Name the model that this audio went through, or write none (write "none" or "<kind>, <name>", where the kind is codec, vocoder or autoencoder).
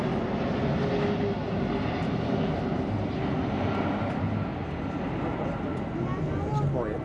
none